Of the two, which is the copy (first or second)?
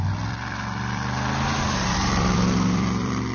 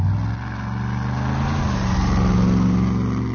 first